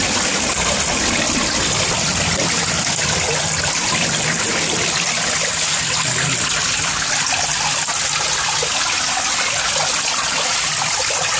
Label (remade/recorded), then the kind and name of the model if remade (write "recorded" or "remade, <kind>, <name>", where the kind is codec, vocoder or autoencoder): recorded